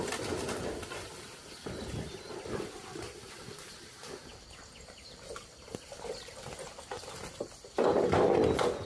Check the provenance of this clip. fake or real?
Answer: real